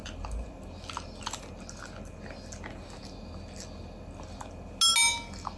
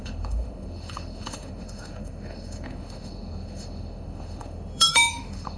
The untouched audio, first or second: first